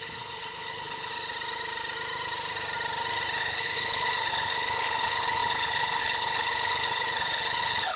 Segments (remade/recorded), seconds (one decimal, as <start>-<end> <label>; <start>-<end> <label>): 0.0-1.1 remade; 1.1-3.4 recorded; 3.4-8.0 remade